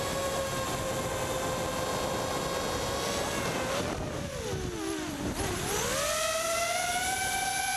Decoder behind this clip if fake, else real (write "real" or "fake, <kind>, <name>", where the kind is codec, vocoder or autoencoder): real